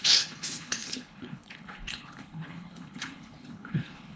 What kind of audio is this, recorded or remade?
remade